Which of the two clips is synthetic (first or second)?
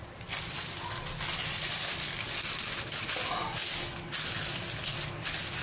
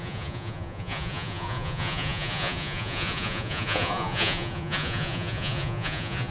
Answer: second